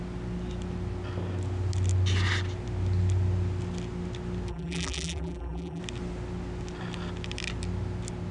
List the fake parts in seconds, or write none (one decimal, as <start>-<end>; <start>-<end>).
4.5-5.8